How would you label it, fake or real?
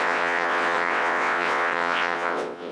fake